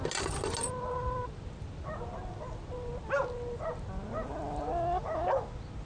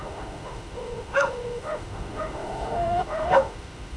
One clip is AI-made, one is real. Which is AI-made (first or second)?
second